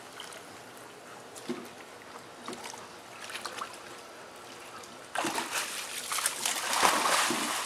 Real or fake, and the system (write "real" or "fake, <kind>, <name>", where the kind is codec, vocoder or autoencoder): real